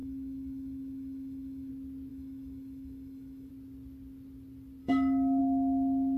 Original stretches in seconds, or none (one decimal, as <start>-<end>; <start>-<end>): 1.7-2.1; 3.5-4.8; 5.4-6.2